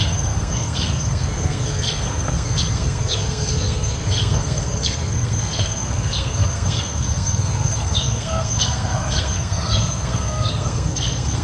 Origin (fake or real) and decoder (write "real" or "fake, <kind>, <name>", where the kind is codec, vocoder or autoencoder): fake, codec, SNAC